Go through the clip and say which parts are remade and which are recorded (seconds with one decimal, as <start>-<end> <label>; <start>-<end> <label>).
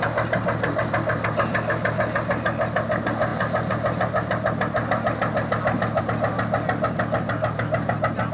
0.0-8.3 recorded